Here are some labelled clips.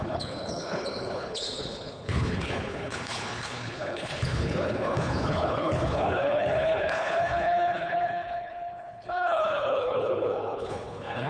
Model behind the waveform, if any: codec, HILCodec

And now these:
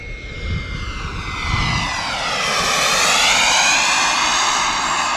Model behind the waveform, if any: none